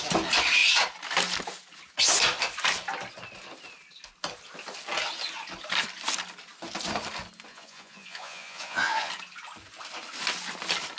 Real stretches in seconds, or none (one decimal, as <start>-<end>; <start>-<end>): 0.0-7.5; 9.1-11.0